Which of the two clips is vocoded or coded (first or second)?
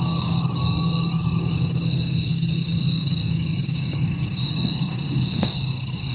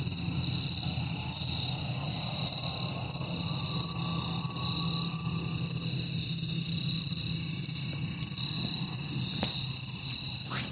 first